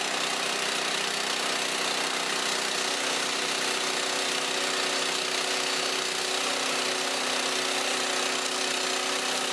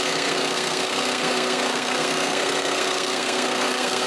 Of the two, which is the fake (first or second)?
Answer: second